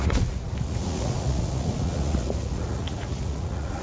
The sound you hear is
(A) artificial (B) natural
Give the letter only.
A